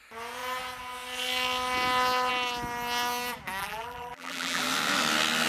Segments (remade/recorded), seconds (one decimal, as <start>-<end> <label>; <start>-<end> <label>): 0.0-3.6 recorded; 3.6-4.6 remade; 4.6-5.5 recorded